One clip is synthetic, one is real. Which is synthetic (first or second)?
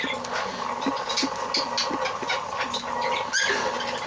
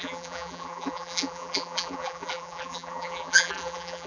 second